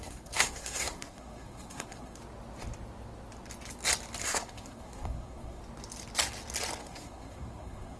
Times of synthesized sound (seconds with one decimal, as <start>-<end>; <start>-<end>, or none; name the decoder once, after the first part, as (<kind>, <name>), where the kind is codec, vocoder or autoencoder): 0.0-2.2 (codec, SNAC); 4.2-5.6; 6.8-8.0